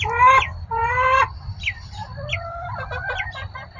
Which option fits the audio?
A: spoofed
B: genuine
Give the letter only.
B